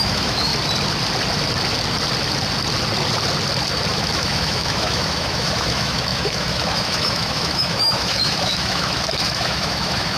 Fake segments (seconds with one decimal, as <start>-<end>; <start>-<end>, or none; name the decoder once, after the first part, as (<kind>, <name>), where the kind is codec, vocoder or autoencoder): 0.0-0.5 (autoencoder, DAC-VAE); 3.9-10.2